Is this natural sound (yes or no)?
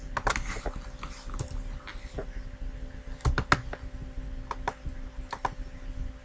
yes